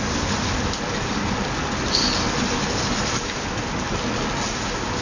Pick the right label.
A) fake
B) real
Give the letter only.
B